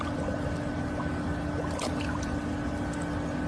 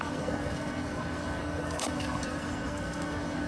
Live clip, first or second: first